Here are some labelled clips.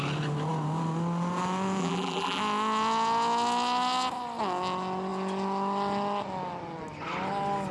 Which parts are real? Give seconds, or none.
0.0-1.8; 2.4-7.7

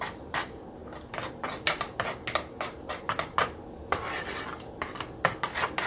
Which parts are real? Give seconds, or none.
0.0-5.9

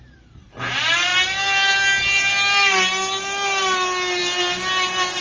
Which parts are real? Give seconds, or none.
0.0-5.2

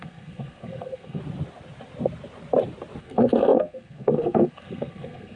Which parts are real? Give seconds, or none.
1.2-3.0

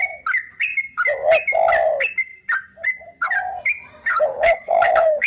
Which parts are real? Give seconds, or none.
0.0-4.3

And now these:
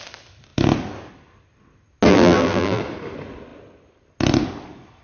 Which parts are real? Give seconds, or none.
0.0-2.1; 2.8-5.0

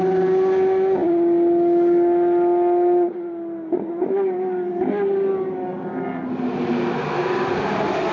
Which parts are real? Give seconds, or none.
0.0-8.1

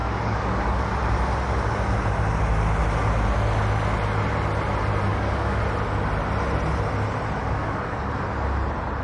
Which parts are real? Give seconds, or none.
0.9-5.1; 5.6-7.4; 8.1-9.0